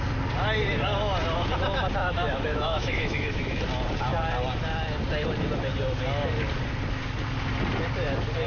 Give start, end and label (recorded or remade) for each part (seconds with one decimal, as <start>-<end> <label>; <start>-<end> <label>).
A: 0.0-2.0 recorded; 2.0-3.6 remade; 3.6-8.5 recorded